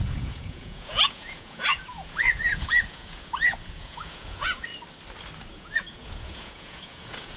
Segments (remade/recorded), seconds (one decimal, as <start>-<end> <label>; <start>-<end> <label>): 0.0-4.7 remade; 4.7-5.5 recorded; 5.5-7.4 remade